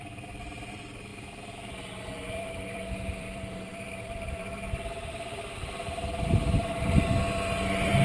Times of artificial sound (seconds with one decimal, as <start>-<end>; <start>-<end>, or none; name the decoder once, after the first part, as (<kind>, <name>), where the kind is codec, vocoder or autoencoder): 0.0-1.1 (vocoder, BigVGAN v2); 2.4-8.0